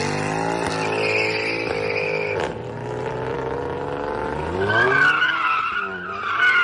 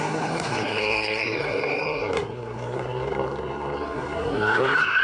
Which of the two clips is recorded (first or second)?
first